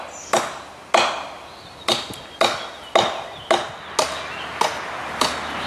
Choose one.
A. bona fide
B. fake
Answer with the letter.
A